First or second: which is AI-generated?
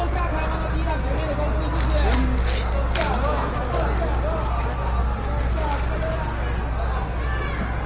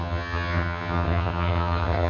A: second